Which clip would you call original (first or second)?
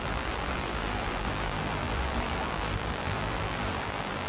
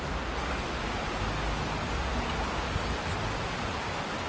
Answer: second